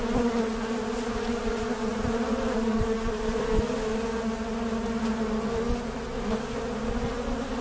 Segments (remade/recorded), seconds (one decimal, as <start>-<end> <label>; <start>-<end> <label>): 0.0-1.9 recorded; 1.9-3.4 remade; 3.4-7.6 recorded